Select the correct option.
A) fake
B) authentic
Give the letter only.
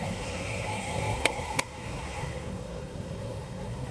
A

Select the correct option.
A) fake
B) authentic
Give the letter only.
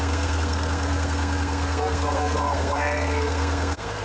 A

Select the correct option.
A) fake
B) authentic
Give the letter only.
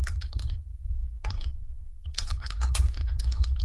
A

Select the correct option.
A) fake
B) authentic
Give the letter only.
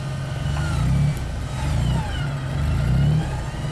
B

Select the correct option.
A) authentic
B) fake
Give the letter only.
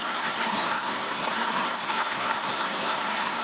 B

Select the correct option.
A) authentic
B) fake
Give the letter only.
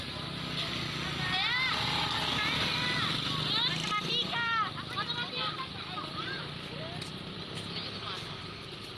A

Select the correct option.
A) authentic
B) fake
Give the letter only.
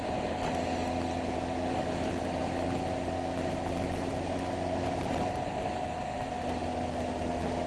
A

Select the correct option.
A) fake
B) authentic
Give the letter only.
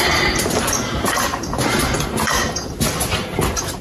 B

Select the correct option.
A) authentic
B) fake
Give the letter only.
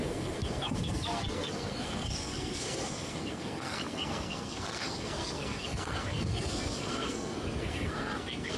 B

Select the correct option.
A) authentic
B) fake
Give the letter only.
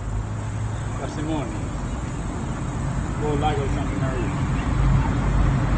A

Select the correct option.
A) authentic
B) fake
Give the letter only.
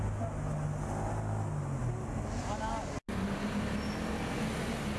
A